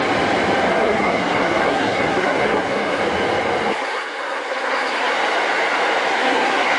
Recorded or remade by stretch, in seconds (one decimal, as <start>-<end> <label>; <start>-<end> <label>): 0.0-0.7 recorded; 0.7-3.0 remade; 3.0-3.7 recorded; 3.7-5.1 remade; 5.1-6.1 recorded; 6.1-6.8 remade